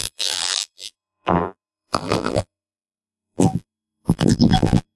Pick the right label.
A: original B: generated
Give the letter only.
B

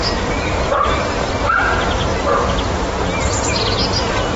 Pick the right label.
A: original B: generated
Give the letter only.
A